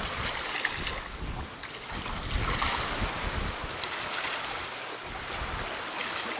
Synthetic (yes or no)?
no